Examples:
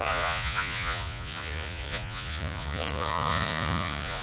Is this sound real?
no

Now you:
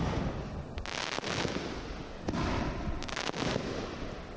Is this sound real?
yes